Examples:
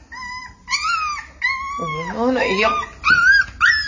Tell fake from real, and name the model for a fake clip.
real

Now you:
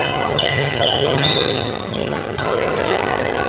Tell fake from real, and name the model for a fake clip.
fake, vocoder, HiFi-GAN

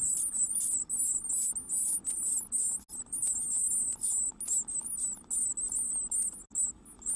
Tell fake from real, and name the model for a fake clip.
real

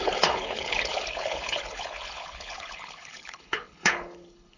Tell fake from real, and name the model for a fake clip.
fake, codec, HILCodec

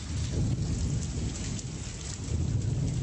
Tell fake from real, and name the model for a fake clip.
real